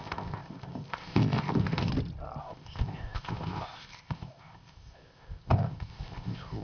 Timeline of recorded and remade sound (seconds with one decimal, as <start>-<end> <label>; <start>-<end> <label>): 0.0-1.9 remade; 1.9-2.4 recorded; 2.4-6.6 remade